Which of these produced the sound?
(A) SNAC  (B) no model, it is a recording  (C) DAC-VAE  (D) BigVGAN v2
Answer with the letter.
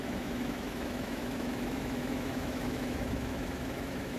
C